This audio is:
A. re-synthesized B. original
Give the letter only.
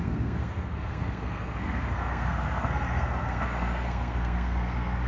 A